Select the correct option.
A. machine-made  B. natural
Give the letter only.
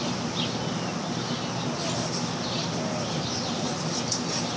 B